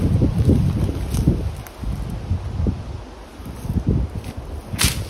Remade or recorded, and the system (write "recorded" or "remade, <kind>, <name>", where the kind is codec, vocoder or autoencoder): recorded